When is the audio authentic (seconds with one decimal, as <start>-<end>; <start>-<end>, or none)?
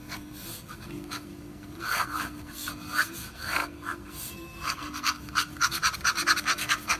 5.8-6.4